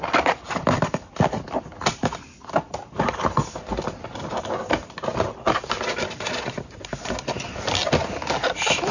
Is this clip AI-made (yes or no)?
no